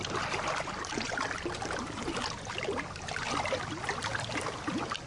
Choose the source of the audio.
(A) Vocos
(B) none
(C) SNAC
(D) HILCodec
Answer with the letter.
B